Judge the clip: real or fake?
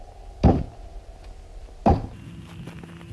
real